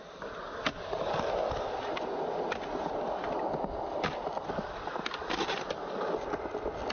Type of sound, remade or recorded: recorded